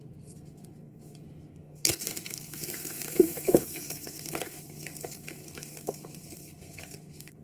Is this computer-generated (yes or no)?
yes